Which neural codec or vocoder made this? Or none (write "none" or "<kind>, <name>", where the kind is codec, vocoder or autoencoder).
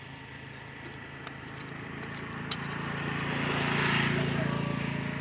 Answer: none